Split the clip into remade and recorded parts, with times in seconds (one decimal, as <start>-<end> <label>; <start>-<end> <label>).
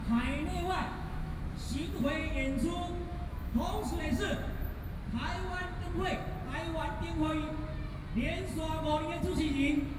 0.0-0.5 recorded; 0.5-1.4 remade; 1.4-3.1 recorded; 3.1-3.6 remade; 3.6-10.0 recorded